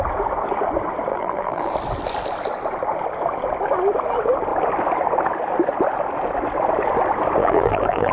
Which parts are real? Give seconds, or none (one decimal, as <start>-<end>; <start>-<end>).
0.0-1.1; 1.7-7.4